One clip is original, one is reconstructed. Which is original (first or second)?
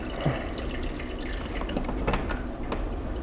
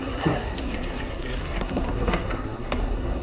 first